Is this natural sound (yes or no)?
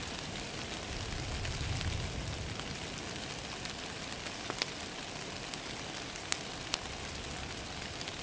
yes